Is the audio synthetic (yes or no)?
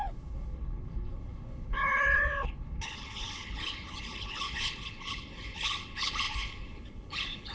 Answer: yes